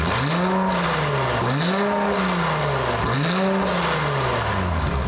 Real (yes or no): yes